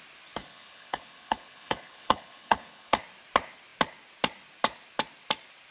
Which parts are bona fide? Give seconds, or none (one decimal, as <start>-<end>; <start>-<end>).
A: 0.0-0.4; 3.0-5.7